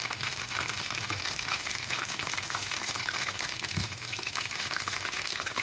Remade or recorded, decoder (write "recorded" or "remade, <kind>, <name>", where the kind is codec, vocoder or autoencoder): remade, autoencoder, DAC-VAE